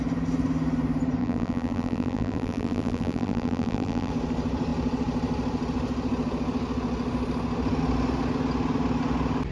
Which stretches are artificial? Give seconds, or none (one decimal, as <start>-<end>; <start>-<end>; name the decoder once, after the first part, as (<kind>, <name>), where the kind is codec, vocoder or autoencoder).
1.2-4.1 (vocoder, BigVGAN v2)